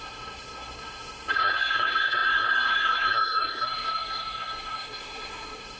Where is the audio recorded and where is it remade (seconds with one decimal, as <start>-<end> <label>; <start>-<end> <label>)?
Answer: 0.0-5.8 remade

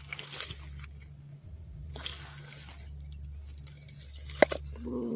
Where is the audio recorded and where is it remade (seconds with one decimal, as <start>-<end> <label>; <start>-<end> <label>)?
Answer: 0.0-1.3 recorded; 1.3-1.9 remade; 1.9-5.2 recorded

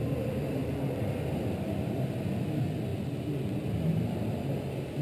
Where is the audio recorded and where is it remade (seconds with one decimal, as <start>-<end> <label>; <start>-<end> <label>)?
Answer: 0.0-5.0 recorded